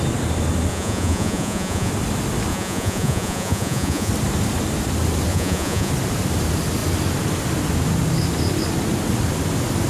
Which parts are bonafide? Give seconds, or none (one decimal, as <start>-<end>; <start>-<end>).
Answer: 0.0-0.7; 1.9-2.5; 4.1-5.3; 5.9-9.9